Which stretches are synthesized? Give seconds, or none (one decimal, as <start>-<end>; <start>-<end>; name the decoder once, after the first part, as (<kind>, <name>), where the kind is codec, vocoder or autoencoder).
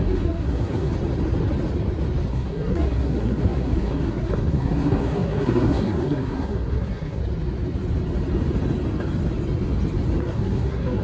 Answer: 0.0-0.9 (codec, SNAC); 2.3-7.2; 10.2-11.0